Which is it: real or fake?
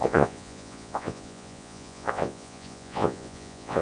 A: fake